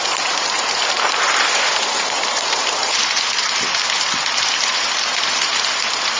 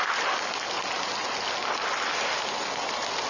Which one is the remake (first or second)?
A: first